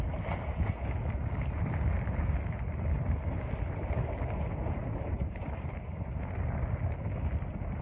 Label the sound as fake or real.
real